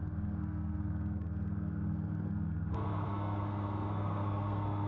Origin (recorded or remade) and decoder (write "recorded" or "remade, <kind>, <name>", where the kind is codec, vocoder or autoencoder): remade, codec, SNAC